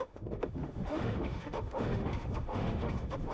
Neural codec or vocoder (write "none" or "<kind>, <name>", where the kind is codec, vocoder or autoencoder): autoencoder, DAC-VAE